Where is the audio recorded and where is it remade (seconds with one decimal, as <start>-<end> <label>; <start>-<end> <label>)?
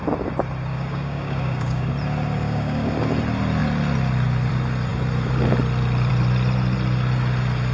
0.0-0.7 recorded; 0.7-1.9 remade; 1.9-2.4 recorded; 2.4-2.9 remade; 2.9-7.7 recorded